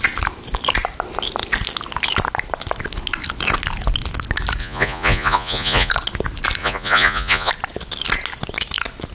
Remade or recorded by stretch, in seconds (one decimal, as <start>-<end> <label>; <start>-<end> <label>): 0.0-4.6 recorded; 4.6-5.9 remade; 5.9-6.6 recorded; 6.6-7.5 remade; 7.5-9.1 recorded